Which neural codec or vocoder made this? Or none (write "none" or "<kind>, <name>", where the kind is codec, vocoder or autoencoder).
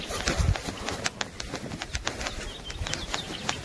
none